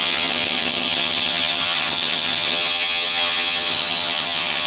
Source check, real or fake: fake